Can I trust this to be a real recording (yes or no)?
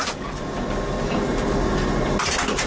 yes